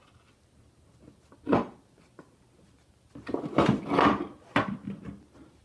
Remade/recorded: recorded